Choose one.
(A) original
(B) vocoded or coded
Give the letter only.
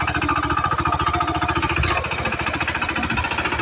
A